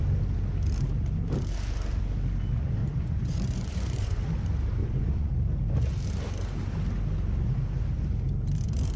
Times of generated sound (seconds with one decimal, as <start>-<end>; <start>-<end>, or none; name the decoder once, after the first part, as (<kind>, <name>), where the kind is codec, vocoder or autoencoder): 2.8-4.2 (vocoder, Vocos); 4.8-5.3

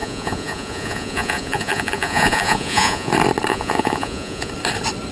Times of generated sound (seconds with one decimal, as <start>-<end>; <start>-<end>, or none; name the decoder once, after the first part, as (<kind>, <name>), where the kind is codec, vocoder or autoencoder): 0.0-3.1 (vocoder, Vocos); 3.5-4.5

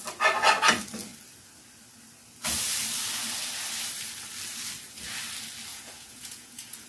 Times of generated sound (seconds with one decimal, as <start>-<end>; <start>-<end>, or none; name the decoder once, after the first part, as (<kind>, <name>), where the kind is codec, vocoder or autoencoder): 5.7-6.9 (vocoder, Vocos)